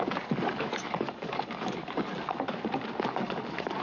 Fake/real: fake